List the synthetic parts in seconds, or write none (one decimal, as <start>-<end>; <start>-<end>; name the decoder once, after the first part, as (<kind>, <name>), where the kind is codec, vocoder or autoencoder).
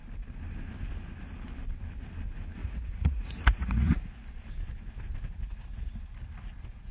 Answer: 2.6-4.0 (vocoder, Vocos)